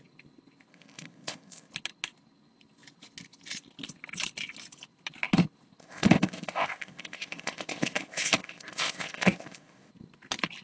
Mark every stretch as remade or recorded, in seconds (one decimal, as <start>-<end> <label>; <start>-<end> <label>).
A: 0.0-0.7 recorded; 0.7-1.7 remade; 1.7-5.8 recorded; 5.8-9.9 remade; 9.9-10.6 recorded